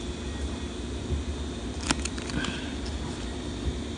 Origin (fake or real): real